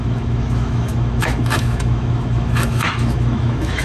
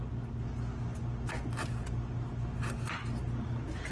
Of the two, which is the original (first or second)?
second